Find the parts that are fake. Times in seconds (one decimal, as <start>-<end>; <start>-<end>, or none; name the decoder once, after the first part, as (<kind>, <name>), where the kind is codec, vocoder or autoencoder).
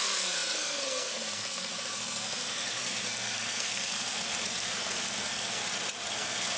0.0-5.6 (codec, SNAC); 6.1-6.6